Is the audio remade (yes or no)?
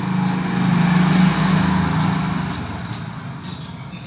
no